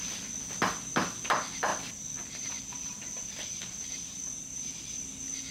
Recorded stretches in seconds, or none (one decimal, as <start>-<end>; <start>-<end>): 0.0-1.7; 5.0-5.5